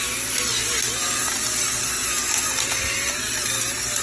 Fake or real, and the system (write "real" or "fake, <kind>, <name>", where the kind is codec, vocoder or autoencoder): real